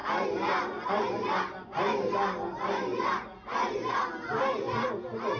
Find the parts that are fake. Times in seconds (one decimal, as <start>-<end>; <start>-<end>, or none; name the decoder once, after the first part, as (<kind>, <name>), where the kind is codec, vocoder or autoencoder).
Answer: none